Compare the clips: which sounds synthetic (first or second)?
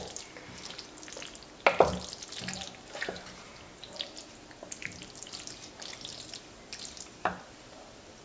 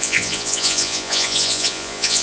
second